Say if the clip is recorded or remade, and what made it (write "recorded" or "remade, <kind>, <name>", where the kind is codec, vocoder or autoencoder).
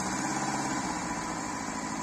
recorded